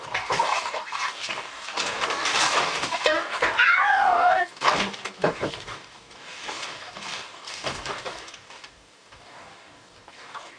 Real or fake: fake